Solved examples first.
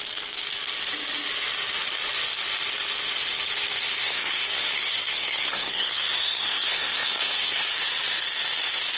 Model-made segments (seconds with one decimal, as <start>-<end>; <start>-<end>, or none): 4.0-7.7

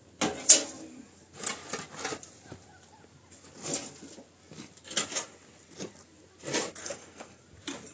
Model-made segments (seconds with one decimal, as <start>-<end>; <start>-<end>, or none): 6.8-7.4

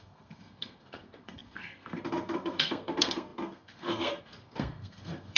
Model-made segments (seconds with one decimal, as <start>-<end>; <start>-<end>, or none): 0.0-5.4